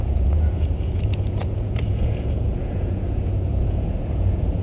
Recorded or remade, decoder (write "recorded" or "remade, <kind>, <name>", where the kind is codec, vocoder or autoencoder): remade, vocoder, Vocos